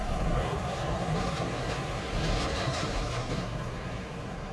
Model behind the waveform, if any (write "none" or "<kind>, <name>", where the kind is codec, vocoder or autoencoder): codec, SNAC